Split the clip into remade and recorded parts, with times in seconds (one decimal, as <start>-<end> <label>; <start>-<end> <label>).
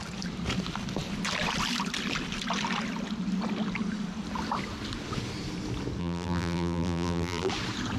0.0-6.0 recorded; 6.0-7.5 remade; 7.5-8.0 recorded